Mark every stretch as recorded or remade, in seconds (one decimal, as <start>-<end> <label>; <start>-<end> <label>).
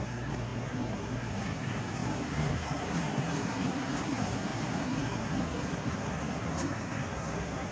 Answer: 0.0-7.7 remade